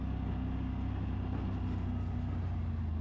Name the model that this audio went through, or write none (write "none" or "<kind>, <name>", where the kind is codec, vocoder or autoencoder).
none